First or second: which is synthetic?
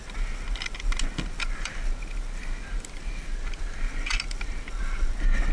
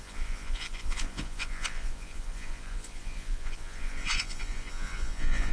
second